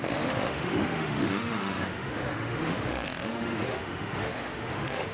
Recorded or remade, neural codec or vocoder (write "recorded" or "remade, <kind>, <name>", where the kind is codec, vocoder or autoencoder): remade, autoencoder, DAC-VAE